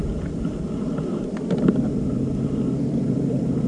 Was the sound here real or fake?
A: fake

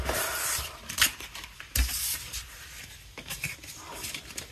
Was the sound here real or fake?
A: fake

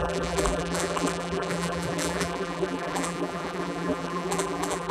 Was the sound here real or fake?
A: fake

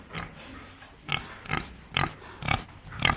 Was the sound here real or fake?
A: real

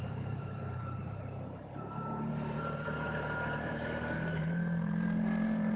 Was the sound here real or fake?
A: fake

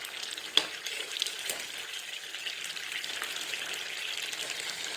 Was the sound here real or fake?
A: real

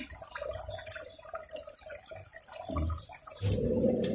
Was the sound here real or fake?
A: fake